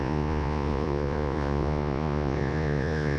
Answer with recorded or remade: remade